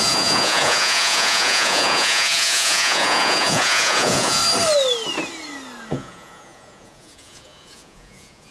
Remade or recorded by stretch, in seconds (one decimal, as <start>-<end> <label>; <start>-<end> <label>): 0.0-4.4 remade; 4.4-5.9 recorded; 5.9-8.5 remade